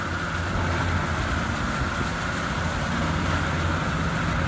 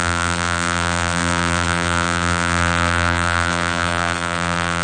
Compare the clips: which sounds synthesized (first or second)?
second